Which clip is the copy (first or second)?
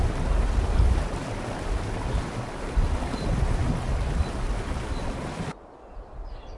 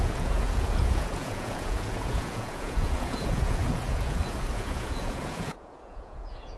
second